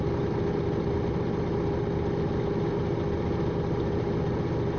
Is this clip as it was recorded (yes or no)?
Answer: yes